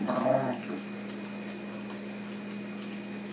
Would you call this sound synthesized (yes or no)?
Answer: no